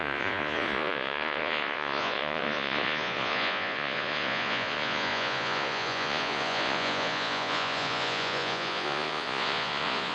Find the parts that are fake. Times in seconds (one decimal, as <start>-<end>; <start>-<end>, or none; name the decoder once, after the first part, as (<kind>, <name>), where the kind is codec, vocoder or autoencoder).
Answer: 0.0-10.1 (vocoder, Vocos)